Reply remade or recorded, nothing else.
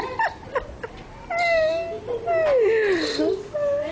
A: recorded